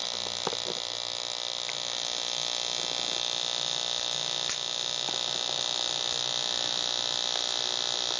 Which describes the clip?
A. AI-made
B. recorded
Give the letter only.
B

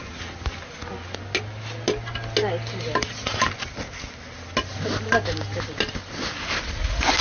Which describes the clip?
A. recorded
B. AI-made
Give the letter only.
A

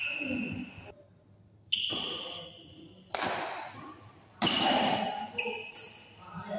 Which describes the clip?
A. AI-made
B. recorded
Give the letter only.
B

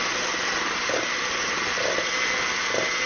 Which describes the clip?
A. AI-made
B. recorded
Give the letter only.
B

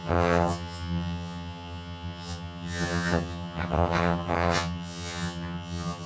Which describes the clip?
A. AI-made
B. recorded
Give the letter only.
A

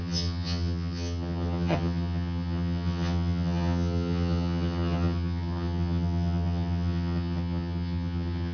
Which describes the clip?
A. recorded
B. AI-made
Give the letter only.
B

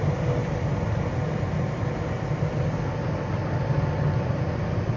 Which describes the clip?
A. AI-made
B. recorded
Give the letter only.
B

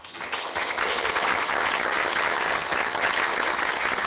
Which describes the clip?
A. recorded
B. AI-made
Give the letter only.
B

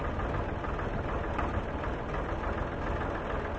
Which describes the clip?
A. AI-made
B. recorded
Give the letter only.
B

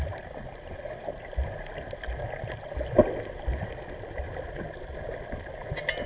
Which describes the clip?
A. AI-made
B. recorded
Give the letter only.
B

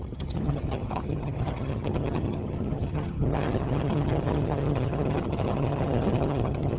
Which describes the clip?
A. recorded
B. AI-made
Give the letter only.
B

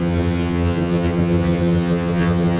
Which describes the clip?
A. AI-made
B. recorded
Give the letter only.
A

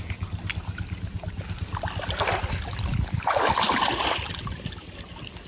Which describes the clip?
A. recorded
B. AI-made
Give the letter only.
A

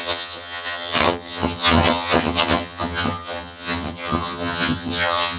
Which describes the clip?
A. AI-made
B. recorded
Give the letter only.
A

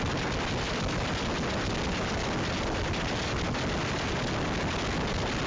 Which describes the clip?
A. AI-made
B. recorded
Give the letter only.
B